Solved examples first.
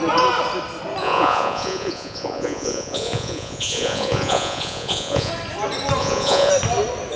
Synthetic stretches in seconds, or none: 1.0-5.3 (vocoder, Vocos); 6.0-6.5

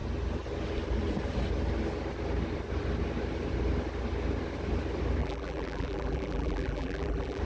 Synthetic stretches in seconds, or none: 5.2-7.4 (vocoder, BigVGAN v2)

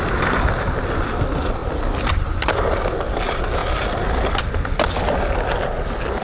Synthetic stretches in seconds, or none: none

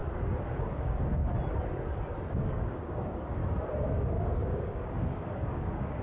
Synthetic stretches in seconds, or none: 0.6-1.3 (codec, DAC); 2.3-3.4; 4.0-6.0

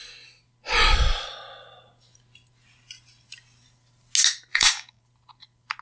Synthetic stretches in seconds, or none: 4.5-5.0 (codec, DAC)

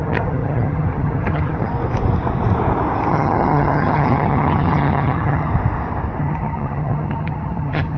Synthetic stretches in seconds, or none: 0.0-1.7 (vocoder, HiFi-GAN); 3.1-5.5; 6.2-8.0

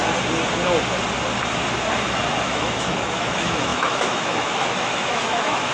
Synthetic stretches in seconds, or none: 2.4-5.7 (autoencoder, DAC-VAE)